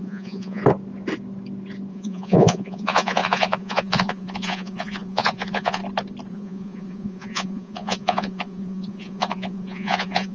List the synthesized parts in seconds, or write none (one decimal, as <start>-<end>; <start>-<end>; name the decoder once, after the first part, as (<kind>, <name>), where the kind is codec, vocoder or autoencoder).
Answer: 0.0-0.6 (vocoder, Vocos); 1.9-5.8; 6.3-10.3